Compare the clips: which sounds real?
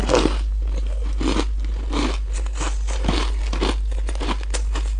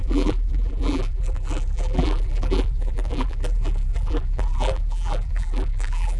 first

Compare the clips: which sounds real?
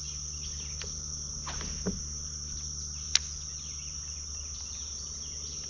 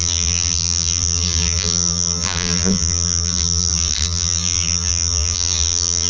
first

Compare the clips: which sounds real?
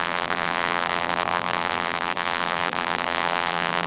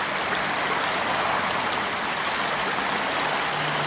second